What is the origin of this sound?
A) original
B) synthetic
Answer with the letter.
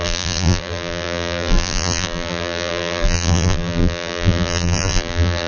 B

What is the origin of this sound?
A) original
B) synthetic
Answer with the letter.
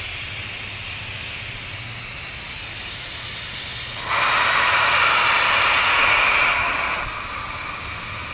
A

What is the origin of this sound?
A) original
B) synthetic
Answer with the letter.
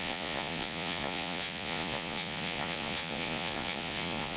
B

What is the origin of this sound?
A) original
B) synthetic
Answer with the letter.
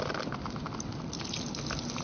A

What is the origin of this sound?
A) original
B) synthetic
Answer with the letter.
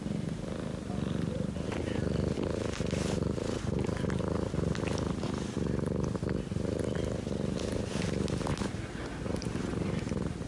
A